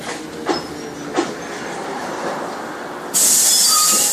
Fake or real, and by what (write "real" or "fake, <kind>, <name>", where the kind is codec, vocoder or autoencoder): real